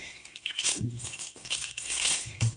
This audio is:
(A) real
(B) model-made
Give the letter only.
B